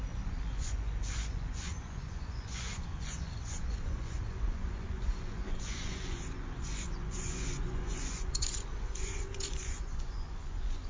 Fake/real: fake